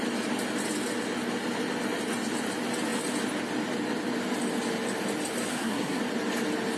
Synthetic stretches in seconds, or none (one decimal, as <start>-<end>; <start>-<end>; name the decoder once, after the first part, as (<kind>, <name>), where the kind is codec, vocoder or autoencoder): 5.5-6.0 (codec, SNAC)